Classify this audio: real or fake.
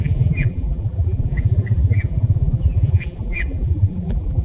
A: fake